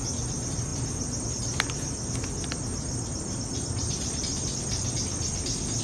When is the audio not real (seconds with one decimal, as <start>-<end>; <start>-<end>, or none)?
2.9-4.8